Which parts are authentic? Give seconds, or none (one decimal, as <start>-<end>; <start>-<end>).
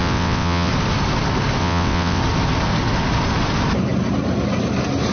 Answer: 0.7-1.6; 2.2-5.1